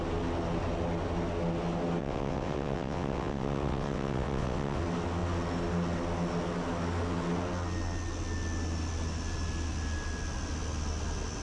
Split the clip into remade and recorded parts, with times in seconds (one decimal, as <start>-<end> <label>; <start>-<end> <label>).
0.0-2.0 recorded; 2.0-4.8 remade; 4.8-11.4 recorded